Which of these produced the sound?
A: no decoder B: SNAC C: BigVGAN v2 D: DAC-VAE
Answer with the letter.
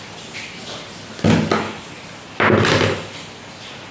A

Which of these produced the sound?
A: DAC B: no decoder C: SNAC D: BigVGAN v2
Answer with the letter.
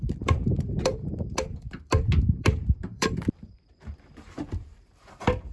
D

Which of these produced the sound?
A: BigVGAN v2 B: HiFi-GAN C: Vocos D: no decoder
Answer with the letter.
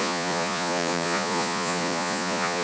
C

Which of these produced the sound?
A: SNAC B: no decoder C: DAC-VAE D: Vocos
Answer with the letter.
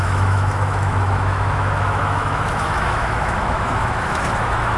C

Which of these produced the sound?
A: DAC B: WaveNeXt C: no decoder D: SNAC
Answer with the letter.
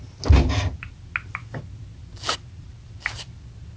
C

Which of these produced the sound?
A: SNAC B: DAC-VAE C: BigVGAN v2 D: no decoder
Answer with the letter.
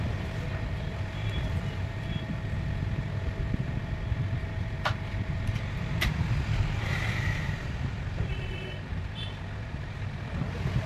C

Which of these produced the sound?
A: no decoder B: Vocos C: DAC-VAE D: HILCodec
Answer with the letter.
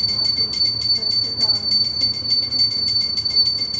A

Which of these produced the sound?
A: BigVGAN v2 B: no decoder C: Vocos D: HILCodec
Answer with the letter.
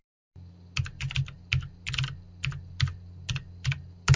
B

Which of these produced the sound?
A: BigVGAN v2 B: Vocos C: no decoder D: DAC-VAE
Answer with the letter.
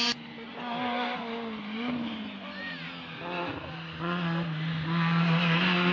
C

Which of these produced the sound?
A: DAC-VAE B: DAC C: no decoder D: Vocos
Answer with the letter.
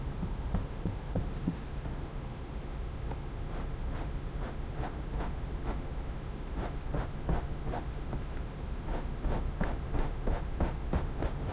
A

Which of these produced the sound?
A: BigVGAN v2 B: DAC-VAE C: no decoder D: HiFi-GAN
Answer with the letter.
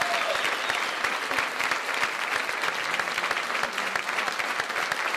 C